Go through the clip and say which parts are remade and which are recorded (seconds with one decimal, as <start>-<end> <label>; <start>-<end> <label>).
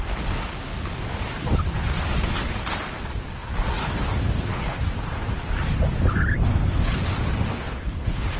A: 0.0-3.8 recorded; 3.8-4.8 remade; 4.8-6.5 recorded; 6.5-7.1 remade; 7.1-7.5 recorded; 7.5-8.4 remade